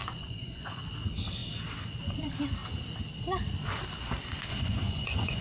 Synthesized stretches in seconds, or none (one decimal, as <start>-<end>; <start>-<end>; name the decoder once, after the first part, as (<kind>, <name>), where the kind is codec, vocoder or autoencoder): 0.0-0.8 (vocoder, Vocos); 4.5-5.4